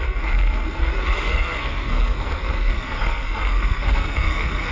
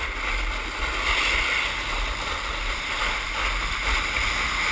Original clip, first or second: second